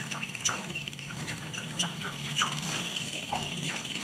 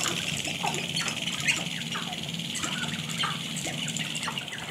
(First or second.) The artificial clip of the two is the first